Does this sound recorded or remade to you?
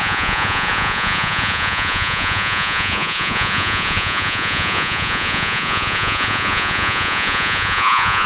remade